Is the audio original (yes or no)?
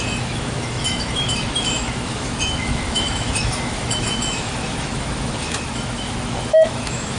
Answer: no